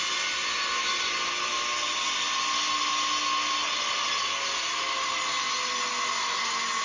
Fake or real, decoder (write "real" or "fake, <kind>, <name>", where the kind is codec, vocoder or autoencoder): real